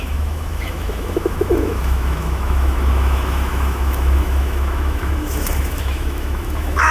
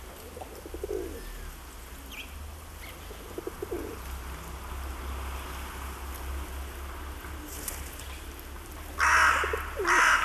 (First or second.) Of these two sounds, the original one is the second